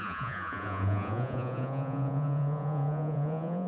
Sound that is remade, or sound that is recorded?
remade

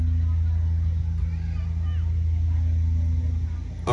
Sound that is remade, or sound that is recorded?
recorded